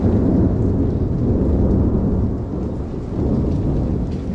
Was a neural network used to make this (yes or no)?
no